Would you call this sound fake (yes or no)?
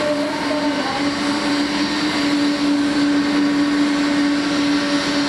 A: no